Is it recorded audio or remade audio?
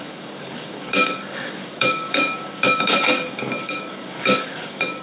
remade